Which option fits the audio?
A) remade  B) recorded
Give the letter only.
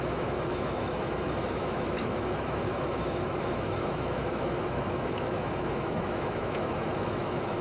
A